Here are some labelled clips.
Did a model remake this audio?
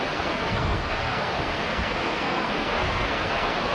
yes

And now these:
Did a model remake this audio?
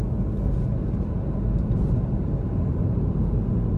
no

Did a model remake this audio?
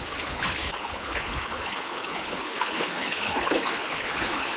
yes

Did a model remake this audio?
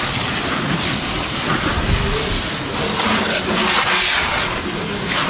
no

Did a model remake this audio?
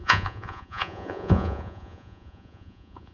yes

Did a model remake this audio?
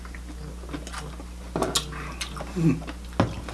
no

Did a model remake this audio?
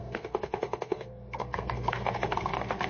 yes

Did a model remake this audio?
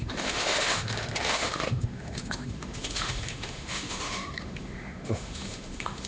yes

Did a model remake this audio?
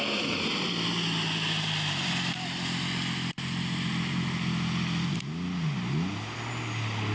no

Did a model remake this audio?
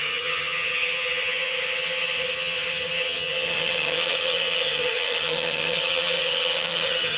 yes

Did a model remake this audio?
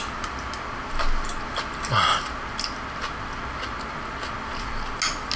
no